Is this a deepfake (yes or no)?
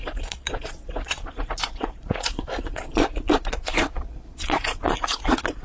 yes